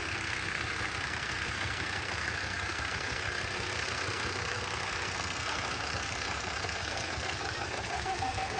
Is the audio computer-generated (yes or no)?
yes